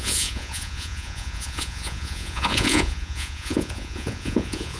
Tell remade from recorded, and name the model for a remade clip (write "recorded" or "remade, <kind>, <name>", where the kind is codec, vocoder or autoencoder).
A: remade, vocoder, Vocos